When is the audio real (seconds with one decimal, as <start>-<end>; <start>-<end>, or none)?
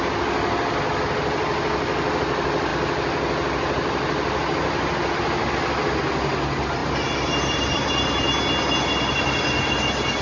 0.0-10.2